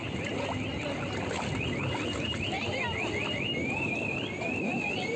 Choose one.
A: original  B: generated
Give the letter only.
A